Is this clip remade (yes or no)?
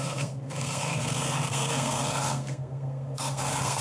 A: yes